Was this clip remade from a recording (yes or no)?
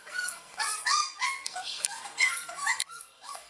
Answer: yes